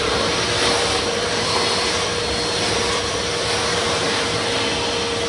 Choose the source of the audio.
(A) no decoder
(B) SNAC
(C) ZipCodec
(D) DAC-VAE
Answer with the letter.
A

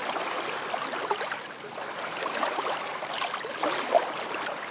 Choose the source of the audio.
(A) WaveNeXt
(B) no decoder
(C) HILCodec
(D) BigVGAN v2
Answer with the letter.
B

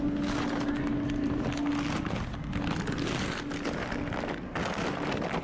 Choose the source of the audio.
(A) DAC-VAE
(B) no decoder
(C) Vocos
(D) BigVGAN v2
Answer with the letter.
B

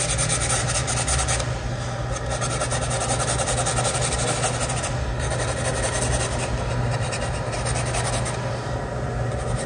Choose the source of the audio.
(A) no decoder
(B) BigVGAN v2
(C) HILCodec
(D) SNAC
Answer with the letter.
A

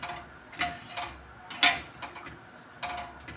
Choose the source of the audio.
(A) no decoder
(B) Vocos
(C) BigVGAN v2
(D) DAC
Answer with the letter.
A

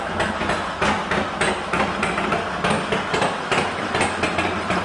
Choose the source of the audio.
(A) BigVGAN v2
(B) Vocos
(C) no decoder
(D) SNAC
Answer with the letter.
C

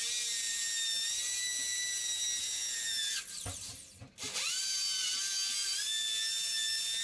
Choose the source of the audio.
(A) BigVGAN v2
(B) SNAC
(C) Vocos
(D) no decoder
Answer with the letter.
D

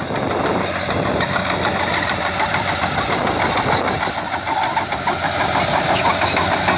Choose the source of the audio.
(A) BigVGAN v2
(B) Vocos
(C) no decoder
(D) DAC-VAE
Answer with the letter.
C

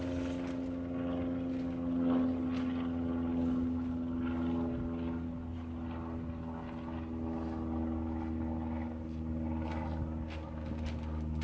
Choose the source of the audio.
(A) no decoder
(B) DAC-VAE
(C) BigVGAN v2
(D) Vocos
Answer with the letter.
A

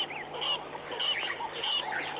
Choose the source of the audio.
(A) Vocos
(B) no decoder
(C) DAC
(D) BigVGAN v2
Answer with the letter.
B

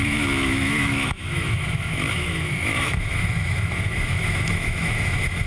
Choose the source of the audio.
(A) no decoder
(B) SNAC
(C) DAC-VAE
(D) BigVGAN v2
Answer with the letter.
C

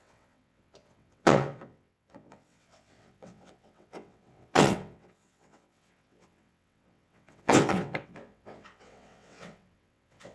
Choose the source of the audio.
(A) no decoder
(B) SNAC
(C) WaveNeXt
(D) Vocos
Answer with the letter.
C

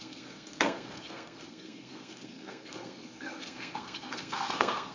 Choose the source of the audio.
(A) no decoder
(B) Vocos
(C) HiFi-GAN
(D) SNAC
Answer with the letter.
D